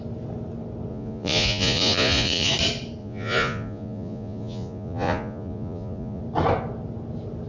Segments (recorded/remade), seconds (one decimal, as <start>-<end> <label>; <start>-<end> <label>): 0.0-0.9 recorded; 0.9-2.5 remade; 2.5-3.0 recorded; 3.0-6.2 remade; 6.2-7.5 recorded